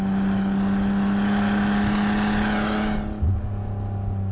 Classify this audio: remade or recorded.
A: recorded